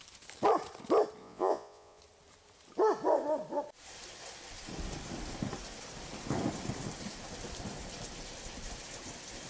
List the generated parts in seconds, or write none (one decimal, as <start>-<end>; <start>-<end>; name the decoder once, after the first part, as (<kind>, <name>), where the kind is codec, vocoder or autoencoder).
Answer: 1.2-2.0 (vocoder, Vocos)